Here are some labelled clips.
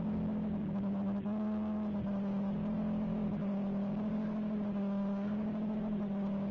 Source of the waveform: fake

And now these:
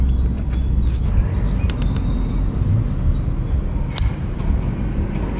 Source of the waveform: real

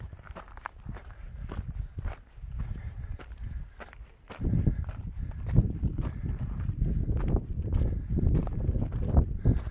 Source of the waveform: real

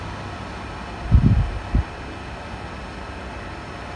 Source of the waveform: real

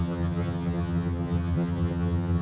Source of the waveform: fake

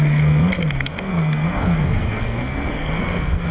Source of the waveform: fake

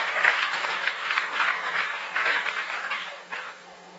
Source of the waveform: fake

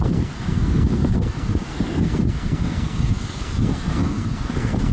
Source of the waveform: fake